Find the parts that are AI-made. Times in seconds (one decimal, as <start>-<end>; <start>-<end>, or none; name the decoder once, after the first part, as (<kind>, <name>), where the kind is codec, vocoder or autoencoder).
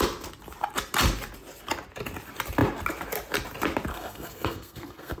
3.9-5.2 (codec, SNAC)